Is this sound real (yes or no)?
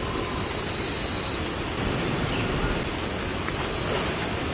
yes